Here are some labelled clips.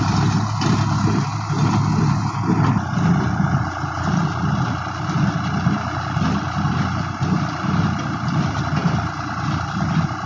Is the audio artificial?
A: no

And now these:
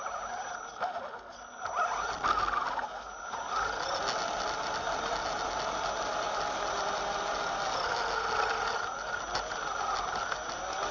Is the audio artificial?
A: no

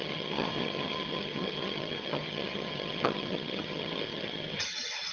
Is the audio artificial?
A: yes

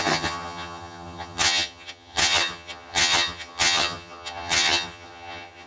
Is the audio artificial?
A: yes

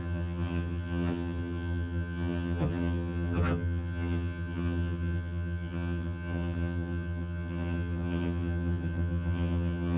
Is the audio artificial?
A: yes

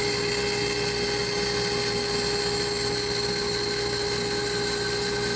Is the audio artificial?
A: no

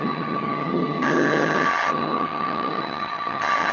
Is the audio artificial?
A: yes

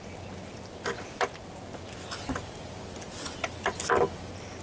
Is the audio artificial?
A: no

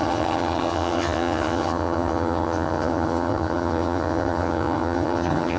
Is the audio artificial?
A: yes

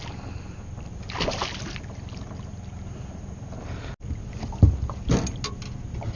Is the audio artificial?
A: no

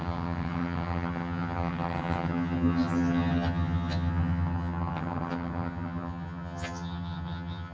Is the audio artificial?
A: yes